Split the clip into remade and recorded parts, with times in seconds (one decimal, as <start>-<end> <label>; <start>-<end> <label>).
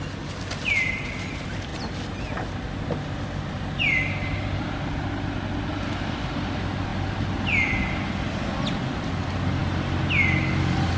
0.0-11.0 recorded